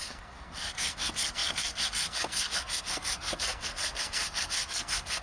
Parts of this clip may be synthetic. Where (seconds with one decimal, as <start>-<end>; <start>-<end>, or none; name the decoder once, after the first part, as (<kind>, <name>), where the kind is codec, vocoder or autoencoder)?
0.0-5.2 (codec, SNAC)